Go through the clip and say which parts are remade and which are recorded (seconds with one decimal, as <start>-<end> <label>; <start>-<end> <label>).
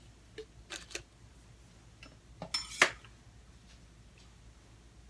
0.0-5.1 recorded